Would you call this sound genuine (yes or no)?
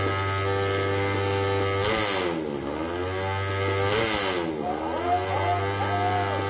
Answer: yes